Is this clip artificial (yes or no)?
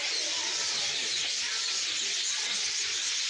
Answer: no